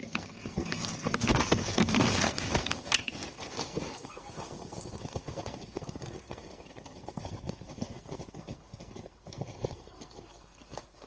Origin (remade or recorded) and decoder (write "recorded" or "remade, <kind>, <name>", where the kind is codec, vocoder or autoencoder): remade, codec, SNAC